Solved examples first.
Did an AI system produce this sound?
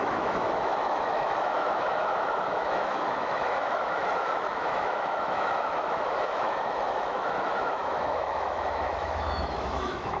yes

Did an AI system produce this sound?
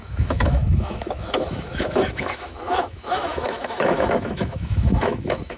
yes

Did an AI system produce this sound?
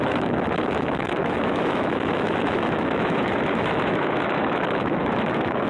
yes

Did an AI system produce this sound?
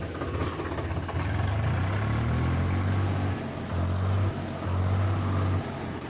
no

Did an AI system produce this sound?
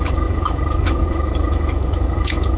yes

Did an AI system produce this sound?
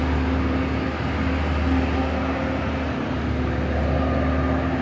no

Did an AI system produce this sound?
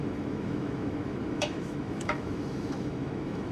yes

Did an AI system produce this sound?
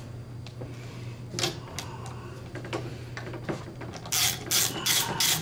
no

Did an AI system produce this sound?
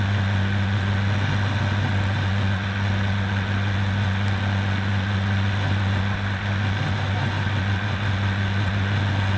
no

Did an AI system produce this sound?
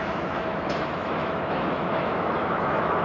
yes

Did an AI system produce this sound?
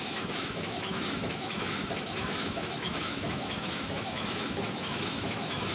yes